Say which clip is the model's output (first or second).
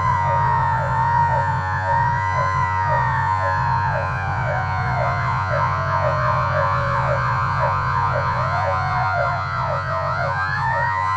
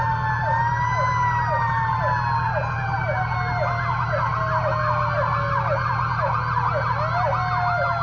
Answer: first